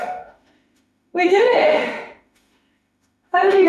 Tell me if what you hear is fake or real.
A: fake